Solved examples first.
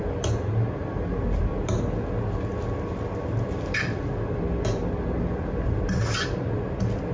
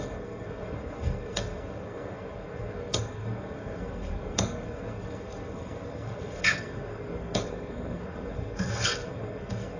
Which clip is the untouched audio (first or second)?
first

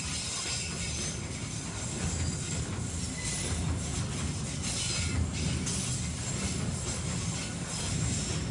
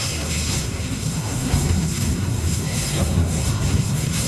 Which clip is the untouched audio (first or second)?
first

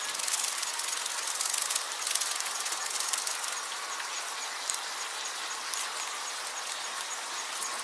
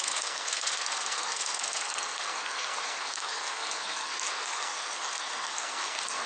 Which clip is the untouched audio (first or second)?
first